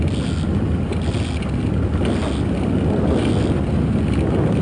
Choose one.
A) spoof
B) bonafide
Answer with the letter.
B